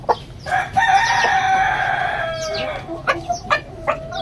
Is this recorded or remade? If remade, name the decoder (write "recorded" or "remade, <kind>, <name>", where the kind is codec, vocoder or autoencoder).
recorded